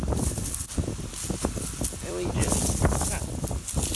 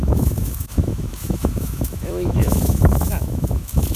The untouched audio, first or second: first